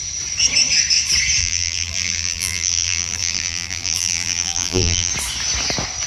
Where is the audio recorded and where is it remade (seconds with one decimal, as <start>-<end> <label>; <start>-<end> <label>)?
0.0-1.4 recorded; 1.4-5.1 remade; 5.1-6.1 recorded